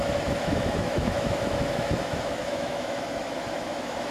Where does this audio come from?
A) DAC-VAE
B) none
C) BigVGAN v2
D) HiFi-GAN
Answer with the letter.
A